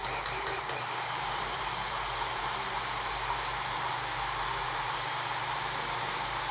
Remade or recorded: remade